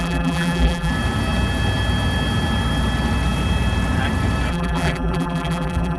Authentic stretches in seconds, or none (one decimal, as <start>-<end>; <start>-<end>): 0.9-4.5